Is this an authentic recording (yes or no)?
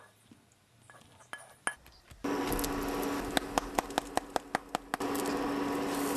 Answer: yes